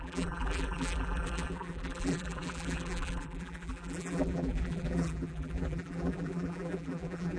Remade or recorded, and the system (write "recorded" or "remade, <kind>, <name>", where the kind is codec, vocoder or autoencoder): remade, vocoder, BigVGAN v2